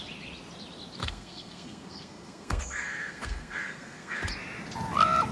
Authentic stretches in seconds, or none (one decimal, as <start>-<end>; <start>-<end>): 0.0-1.0; 4.2-5.3